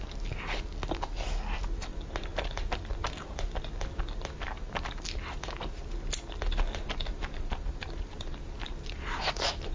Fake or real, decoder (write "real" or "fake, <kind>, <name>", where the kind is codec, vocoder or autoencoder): real